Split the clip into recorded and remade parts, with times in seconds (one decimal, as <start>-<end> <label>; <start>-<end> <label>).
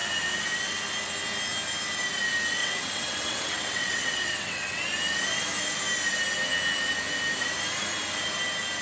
0.0-2.6 recorded; 2.6-4.8 remade; 4.8-8.8 recorded